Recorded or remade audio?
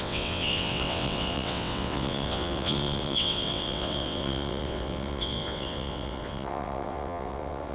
remade